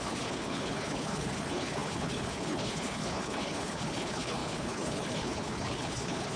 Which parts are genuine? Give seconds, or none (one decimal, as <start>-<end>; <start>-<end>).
none